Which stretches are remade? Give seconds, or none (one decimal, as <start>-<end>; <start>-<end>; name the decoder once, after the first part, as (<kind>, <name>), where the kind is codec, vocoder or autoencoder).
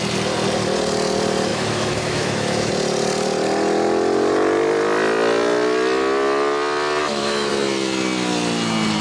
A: 1.5-2.7 (autoencoder, DAC-VAE); 7.0-7.5